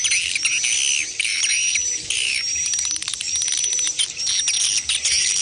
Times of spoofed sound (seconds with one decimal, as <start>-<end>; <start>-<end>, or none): 1.3-4.2